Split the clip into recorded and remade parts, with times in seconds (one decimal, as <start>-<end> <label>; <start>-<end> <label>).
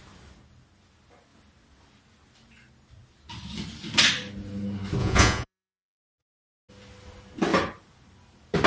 0.0-5.0 recorded; 5.0-6.7 remade; 6.7-8.7 recorded